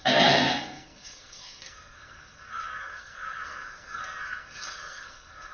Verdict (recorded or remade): remade